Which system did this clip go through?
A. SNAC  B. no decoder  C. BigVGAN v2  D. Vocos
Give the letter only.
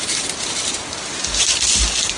B